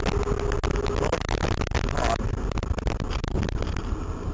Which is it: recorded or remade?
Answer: recorded